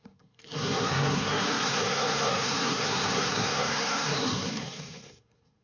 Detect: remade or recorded remade